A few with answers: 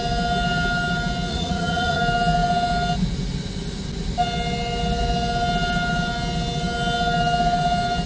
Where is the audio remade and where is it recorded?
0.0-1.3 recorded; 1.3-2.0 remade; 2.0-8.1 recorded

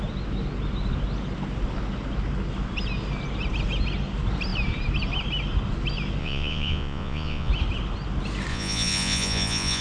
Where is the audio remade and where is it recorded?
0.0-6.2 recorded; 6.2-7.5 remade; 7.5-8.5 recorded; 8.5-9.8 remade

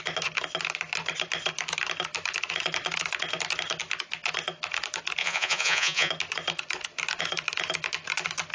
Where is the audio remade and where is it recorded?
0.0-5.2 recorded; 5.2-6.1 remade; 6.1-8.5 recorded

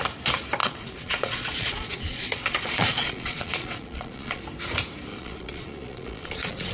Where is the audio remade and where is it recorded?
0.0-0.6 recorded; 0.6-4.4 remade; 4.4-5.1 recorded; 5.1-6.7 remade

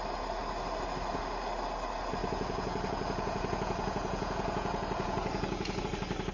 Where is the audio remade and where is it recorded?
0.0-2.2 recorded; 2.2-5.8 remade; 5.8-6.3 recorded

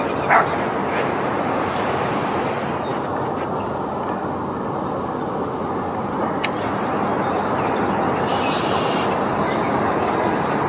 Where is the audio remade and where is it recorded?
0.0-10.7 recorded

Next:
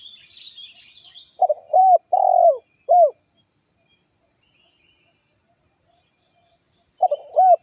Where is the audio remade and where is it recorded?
0.0-7.6 recorded

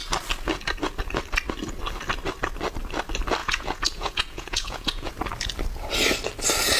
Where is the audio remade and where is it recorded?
0.0-3.4 recorded; 3.4-5.1 remade; 5.1-6.8 recorded